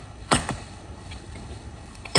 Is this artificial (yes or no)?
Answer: yes